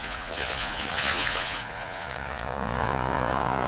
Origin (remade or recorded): remade